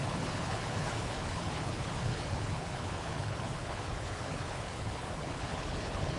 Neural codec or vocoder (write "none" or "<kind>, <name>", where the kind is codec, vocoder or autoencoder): codec, HILCodec